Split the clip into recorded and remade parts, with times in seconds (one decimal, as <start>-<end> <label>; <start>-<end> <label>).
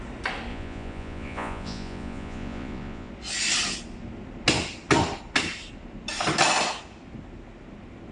0.0-0.5 recorded; 0.5-3.1 remade; 3.1-8.1 recorded